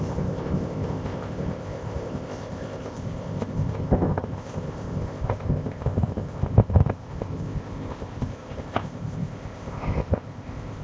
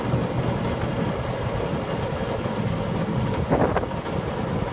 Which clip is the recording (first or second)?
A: second